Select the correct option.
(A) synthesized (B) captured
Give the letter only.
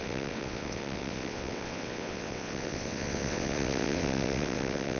A